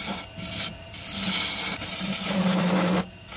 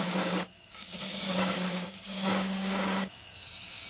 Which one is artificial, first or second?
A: second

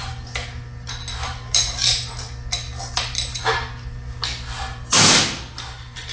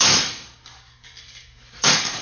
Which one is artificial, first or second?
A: second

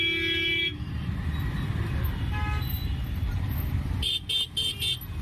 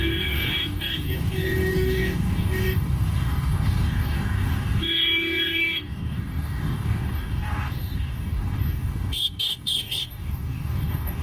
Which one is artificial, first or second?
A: second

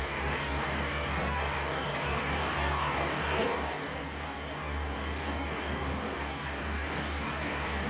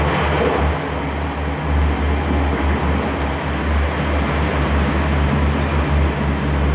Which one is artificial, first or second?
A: first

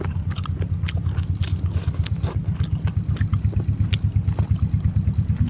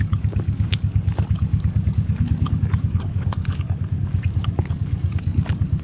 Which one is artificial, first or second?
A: second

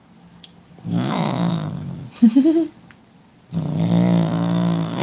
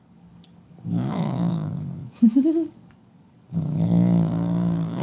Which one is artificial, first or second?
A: second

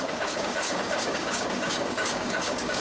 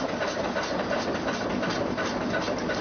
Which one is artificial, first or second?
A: first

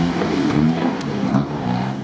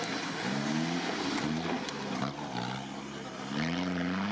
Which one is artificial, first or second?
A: first